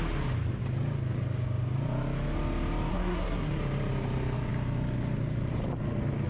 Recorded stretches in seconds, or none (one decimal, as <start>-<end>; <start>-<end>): 0.0-2.9; 3.5-6.3

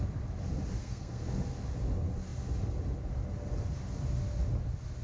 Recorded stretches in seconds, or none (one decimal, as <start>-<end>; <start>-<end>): 0.0-0.8; 1.3-5.0

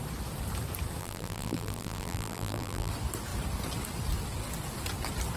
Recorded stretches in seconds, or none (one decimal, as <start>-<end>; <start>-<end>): 0.0-1.0; 2.9-5.4